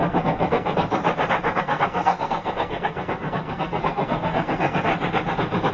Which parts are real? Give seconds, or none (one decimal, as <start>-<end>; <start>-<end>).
1.0-1.6; 4.9-5.7